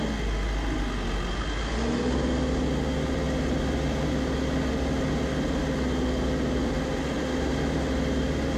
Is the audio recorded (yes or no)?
yes